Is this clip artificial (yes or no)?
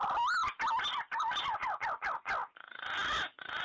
no